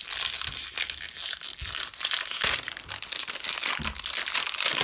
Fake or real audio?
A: real